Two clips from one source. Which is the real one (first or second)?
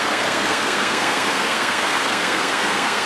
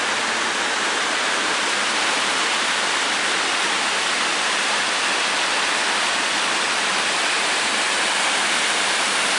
second